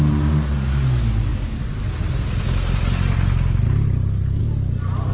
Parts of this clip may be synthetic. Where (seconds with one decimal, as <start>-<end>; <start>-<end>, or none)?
none